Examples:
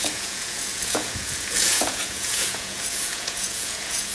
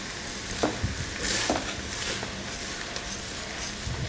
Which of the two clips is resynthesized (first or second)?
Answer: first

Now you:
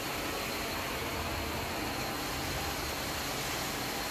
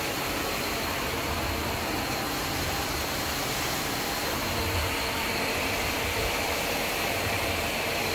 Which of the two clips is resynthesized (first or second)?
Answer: second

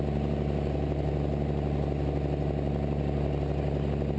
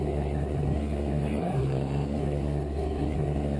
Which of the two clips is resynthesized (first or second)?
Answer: second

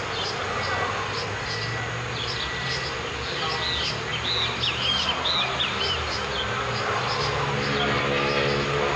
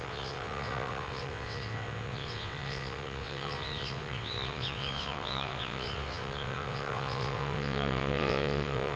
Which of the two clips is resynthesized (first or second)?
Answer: second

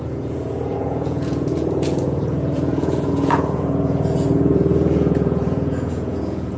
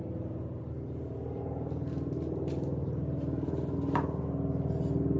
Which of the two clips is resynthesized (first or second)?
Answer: first